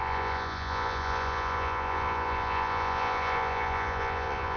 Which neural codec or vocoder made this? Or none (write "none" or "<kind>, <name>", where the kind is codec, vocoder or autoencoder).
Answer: vocoder, Vocos